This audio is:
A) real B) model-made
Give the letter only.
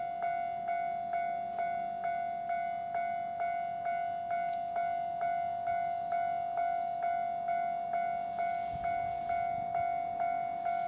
A